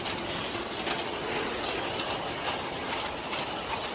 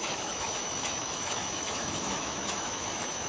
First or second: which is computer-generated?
second